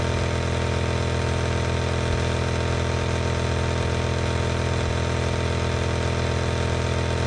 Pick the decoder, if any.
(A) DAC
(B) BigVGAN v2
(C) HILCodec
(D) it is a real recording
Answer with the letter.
D